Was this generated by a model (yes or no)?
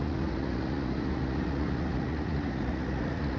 yes